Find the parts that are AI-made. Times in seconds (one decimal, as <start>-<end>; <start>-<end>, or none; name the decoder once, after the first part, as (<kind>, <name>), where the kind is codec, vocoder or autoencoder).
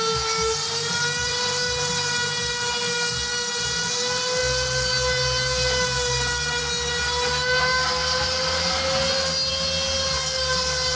none